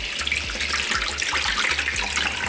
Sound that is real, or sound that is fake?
real